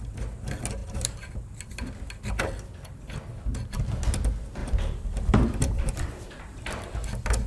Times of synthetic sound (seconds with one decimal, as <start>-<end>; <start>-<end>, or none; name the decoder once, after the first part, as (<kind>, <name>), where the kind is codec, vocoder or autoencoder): 0.8-1.3 (vocoder, BigVGAN v2); 4.6-5.9